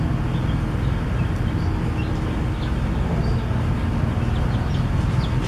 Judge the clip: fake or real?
real